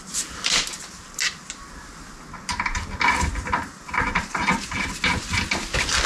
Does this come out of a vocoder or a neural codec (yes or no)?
no